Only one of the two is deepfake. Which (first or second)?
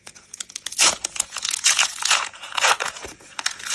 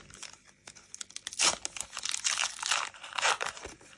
first